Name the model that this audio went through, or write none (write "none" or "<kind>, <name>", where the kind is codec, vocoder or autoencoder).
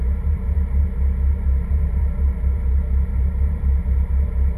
vocoder, BigVGAN v2